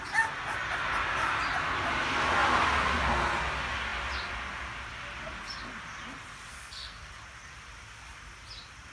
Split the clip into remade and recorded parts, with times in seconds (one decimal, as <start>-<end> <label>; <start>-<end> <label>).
0.0-6.5 recorded; 6.5-7.1 remade; 7.1-8.9 recorded